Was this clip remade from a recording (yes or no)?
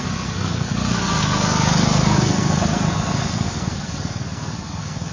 yes